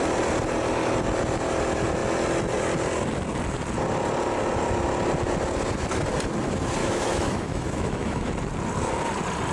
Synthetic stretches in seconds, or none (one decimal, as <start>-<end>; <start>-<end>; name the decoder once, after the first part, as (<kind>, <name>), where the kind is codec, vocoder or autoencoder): 6.8-8.3 (autoencoder, DAC-VAE)